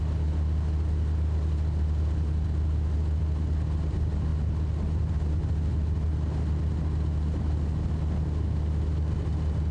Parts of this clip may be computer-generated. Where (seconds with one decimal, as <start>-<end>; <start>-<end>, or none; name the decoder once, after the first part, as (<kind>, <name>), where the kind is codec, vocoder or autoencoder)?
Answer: none